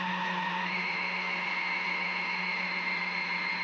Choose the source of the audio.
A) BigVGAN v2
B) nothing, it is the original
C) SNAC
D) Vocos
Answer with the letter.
B